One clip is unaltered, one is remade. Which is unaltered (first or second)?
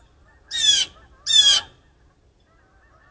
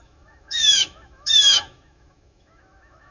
first